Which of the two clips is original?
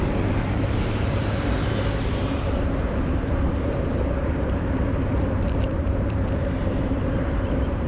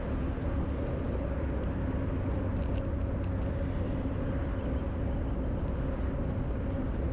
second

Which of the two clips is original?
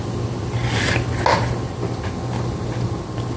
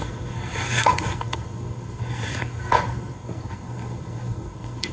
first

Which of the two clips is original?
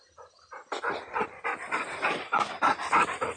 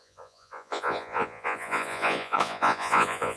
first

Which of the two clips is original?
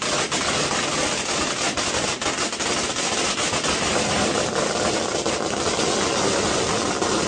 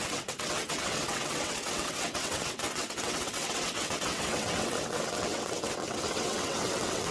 first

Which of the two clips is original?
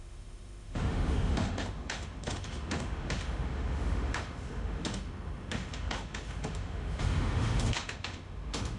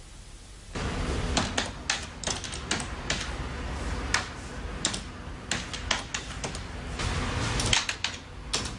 second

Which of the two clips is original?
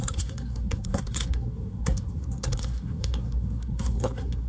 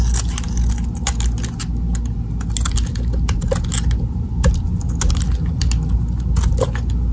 second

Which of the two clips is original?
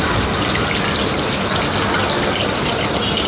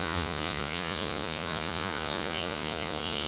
first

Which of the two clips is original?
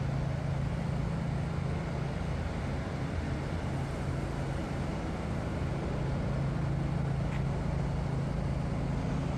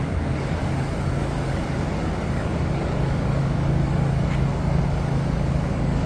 first